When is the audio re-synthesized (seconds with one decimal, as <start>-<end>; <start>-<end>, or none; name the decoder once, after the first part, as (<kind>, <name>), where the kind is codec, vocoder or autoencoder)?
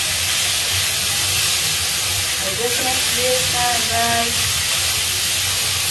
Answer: 2.1-2.8 (vocoder, BigVGAN v2)